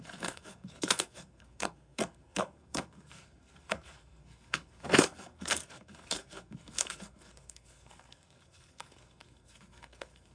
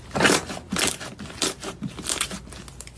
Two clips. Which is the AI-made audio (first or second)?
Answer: first